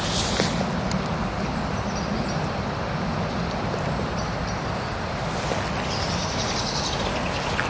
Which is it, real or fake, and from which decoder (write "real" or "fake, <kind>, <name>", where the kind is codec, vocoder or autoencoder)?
real